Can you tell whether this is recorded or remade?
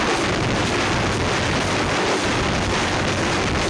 recorded